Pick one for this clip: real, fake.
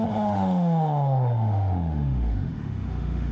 fake